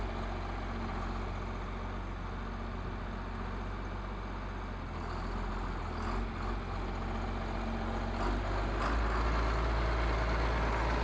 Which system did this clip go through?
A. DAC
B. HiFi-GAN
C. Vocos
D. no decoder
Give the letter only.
D